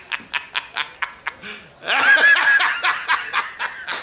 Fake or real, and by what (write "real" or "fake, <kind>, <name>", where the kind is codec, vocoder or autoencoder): real